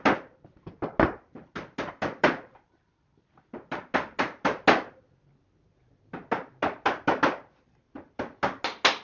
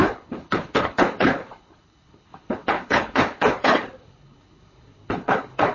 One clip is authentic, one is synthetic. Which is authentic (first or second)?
first